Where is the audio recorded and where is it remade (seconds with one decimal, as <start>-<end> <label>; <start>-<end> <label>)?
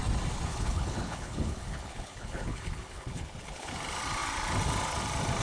0.0-0.5 recorded; 0.5-3.7 remade; 3.7-5.4 recorded